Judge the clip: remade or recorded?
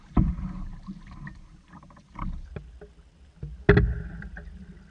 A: recorded